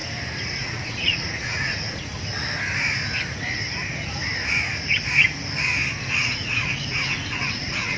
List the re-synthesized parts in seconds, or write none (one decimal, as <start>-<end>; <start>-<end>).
0.5-2.1; 6.2-8.0